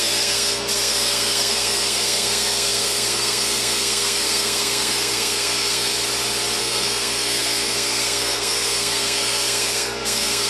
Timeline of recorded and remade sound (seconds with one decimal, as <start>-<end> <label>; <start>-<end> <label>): 0.0-5.9 remade; 5.9-6.6 recorded; 6.6-10.5 remade